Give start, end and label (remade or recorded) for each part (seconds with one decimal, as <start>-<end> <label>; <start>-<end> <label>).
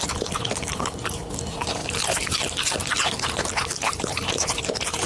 0.0-1.8 recorded; 1.8-5.1 remade